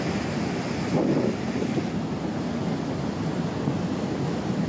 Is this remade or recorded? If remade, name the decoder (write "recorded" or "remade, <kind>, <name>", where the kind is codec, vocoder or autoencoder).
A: recorded